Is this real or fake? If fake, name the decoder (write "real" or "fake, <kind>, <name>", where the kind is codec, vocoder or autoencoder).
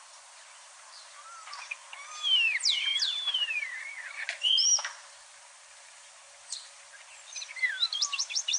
fake, vocoder, BigVGAN v2